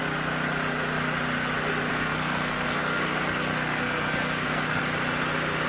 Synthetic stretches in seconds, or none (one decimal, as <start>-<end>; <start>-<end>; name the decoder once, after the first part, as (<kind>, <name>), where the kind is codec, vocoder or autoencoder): 1.9-4.8 (codec, SNAC)